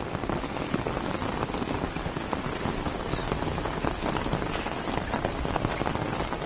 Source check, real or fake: real